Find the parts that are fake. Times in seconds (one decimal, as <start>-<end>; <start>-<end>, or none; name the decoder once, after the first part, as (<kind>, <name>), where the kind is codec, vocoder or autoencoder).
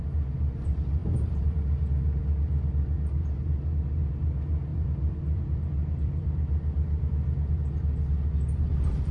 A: 4.7-7.5 (vocoder, BigVGAN v2)